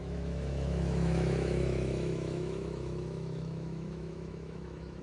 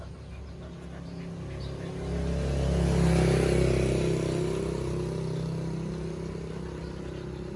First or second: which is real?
second